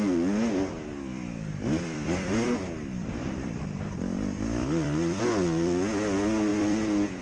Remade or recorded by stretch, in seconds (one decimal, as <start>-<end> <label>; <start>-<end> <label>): 0.0-1.1 recorded; 1.1-2.6 remade; 2.6-3.2 recorded; 3.2-5.2 remade; 5.2-6.5 recorded; 6.5-7.2 remade